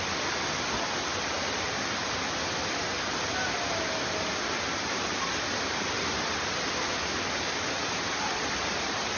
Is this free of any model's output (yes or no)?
yes